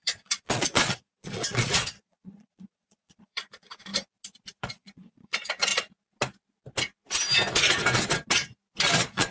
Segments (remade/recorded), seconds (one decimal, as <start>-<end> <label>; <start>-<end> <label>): 0.0-3.9 remade; 3.9-4.6 recorded; 4.6-5.7 remade; 5.7-8.9 recorded; 8.9-9.3 remade